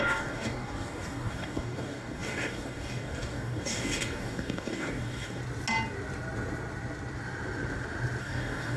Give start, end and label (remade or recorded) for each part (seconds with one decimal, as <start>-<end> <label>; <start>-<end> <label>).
0.0-5.4 remade; 5.4-8.2 recorded; 8.2-8.8 remade